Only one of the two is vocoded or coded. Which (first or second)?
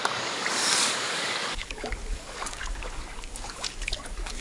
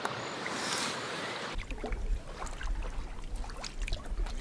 first